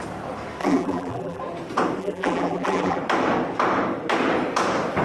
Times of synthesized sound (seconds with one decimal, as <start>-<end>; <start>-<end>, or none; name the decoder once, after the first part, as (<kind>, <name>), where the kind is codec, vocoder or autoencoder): 0.6-1.4 (vocoder, BigVGAN v2); 2.0-3.0

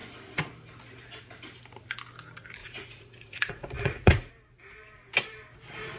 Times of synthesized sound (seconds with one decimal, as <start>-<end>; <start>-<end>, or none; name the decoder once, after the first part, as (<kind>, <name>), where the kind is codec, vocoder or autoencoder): 2.6-4.3 (vocoder, Vocos)

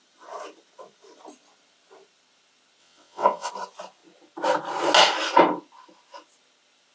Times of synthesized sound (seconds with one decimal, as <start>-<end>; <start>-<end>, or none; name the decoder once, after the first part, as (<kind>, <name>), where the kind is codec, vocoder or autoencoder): 2.8-3.5 (vocoder, WaveNeXt)

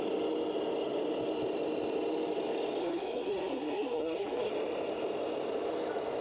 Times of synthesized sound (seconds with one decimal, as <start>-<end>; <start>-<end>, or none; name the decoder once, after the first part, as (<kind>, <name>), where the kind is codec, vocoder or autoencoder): 2.8-4.5 (codec, SNAC)

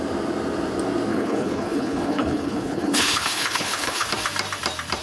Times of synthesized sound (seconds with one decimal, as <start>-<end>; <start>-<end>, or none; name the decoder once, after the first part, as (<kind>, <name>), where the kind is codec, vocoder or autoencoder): 1.1-4.1 (codec, HILCodec)